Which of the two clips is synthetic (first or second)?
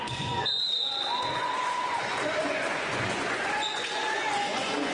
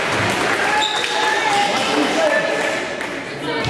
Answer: first